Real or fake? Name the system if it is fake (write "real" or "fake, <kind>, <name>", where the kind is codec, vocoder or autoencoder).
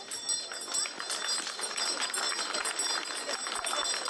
real